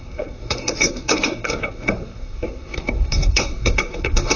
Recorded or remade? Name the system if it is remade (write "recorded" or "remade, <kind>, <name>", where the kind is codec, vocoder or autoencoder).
remade, codec, SNAC